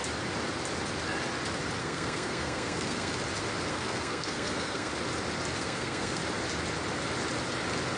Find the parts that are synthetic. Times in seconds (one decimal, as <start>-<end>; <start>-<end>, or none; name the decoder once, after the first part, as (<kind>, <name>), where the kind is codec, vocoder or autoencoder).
1.8-3.1 (codec, SNAC); 3.7-4.9; 5.6-6.2